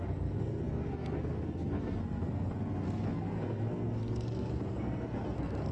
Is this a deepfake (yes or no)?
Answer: yes